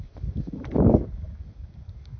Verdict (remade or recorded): remade